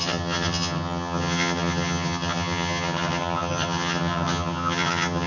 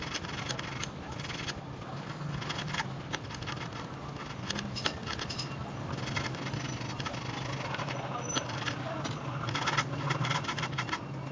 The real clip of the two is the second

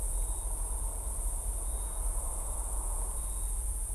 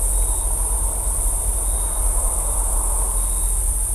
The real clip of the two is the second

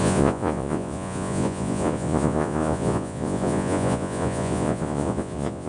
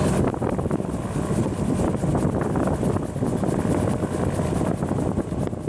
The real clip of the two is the second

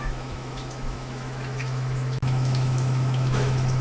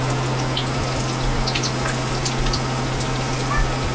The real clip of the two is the second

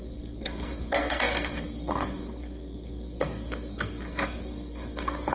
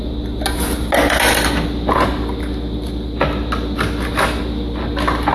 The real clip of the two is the second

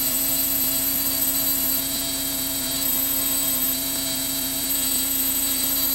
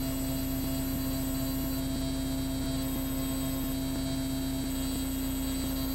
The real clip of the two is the second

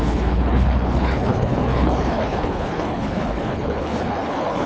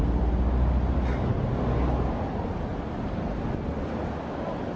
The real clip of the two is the second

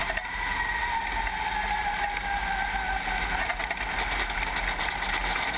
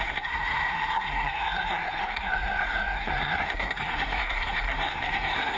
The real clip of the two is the first